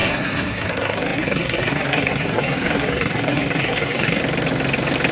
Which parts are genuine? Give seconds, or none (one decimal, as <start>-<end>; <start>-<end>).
4.2-5.1